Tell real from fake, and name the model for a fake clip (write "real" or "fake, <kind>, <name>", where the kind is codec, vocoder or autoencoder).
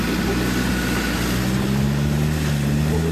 real